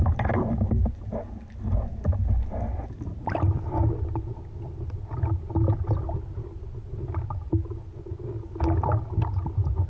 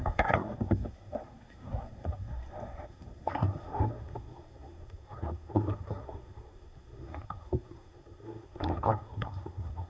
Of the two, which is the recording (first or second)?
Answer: first